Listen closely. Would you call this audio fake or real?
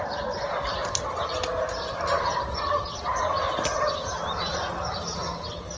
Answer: real